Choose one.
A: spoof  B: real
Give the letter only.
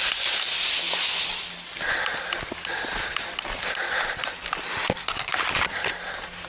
B